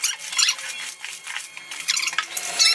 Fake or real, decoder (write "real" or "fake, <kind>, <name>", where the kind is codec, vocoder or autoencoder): real